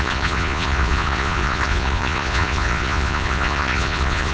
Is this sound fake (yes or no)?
yes